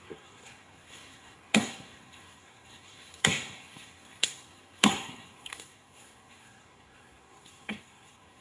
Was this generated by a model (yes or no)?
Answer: yes